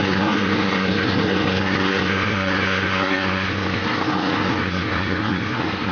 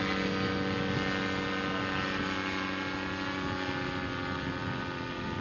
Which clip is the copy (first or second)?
first